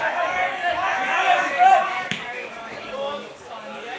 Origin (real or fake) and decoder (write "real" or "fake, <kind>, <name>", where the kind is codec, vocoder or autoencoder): fake, codec, DAC